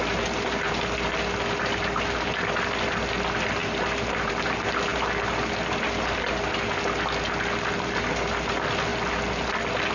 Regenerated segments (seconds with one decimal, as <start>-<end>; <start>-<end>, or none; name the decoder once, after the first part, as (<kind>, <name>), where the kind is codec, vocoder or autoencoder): none